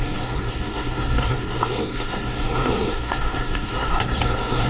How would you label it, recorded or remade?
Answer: remade